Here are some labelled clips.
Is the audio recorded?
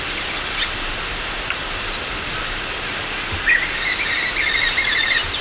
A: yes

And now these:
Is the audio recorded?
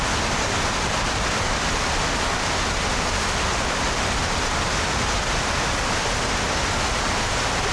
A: yes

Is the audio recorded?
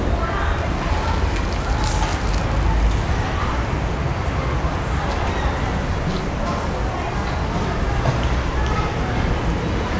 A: yes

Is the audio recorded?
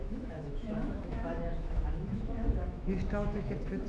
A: no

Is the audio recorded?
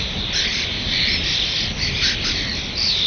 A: yes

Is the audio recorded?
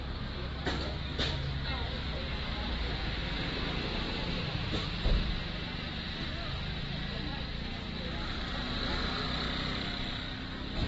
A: yes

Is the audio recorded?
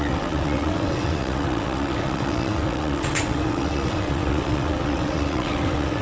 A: no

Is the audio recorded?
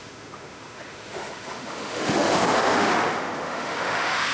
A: no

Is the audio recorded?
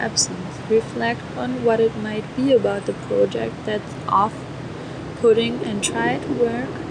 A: yes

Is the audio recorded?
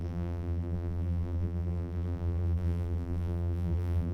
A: no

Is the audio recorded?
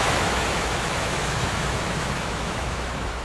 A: no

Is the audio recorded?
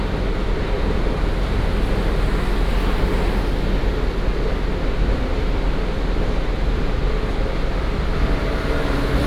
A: yes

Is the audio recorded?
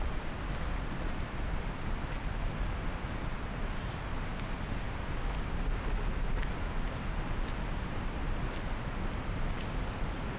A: yes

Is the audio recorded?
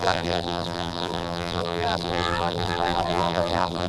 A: no